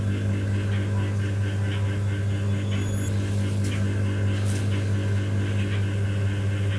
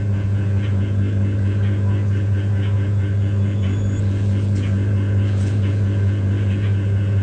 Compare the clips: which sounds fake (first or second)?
second